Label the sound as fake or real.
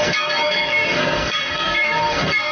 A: fake